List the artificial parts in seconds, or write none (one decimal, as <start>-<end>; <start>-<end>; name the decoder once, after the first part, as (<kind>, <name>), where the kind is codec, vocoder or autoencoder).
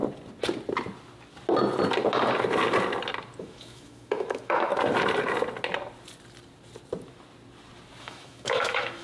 3.4-4.7 (autoencoder, DAC-VAE); 8.0-9.0